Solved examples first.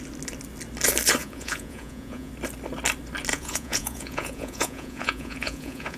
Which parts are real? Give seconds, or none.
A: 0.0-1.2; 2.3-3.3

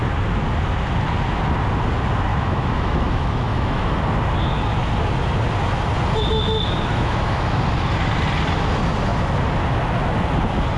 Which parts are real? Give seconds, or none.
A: 0.0-2.3; 4.0-6.9; 7.6-10.8

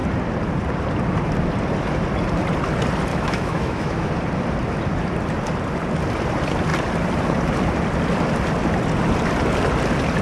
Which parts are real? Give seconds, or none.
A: 0.0-3.1; 4.1-10.2